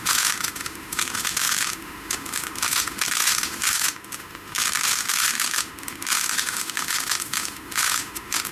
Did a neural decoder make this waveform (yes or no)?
yes